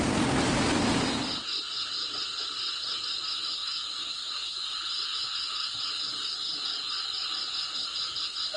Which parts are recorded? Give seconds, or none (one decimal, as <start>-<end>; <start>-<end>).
0.0-8.6